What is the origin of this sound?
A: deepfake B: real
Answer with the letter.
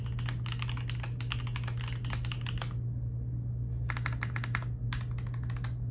B